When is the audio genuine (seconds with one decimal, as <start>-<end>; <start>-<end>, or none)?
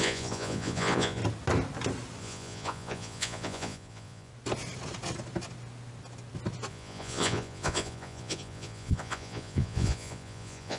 1.2-2.2; 4.3-6.7